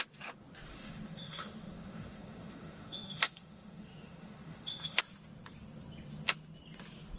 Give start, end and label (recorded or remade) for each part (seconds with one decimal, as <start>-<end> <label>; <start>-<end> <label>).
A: 0.0-0.7 recorded; 0.7-5.0 remade; 5.0-7.2 recorded